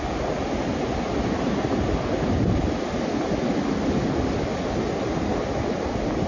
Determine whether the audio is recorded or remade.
recorded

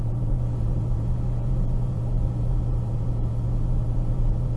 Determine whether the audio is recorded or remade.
remade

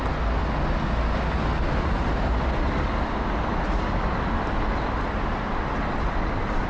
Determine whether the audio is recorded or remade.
recorded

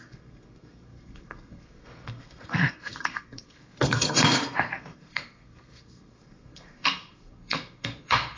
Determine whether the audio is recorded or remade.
remade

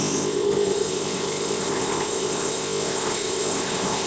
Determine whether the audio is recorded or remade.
remade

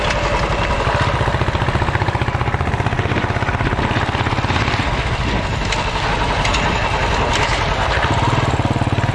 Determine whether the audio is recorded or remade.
recorded